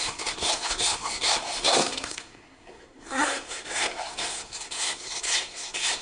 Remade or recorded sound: remade